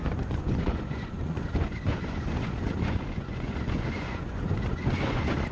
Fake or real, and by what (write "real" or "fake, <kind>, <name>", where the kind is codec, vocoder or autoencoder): fake, vocoder, Vocos